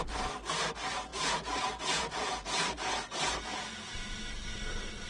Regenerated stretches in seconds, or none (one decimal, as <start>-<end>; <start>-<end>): 1.1-4.2